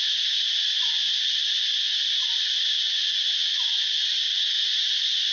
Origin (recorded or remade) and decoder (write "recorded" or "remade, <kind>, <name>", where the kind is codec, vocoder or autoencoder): recorded